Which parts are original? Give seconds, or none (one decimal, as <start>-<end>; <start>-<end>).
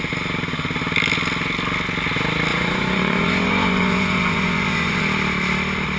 0.0-2.5; 5.0-6.0